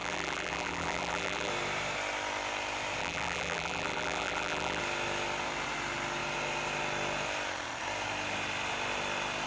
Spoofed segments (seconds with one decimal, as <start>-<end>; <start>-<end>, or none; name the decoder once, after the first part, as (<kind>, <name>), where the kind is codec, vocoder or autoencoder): 0.0-1.5 (vocoder, BigVGAN v2); 3.0-4.8